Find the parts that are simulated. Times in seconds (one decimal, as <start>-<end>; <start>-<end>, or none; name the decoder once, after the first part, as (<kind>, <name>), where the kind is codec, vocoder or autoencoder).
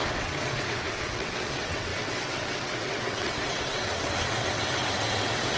0.0-5.6 (vocoder, WaveNeXt)